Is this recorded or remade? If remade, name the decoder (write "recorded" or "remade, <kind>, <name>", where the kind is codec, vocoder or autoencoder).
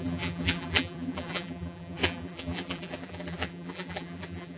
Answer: remade, vocoder, BigVGAN v2